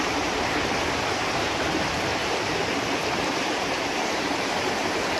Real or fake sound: fake